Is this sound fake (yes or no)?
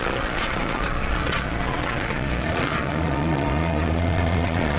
yes